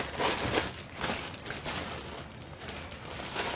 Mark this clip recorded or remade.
recorded